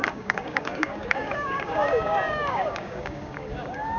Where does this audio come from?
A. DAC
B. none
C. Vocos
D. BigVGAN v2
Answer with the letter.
A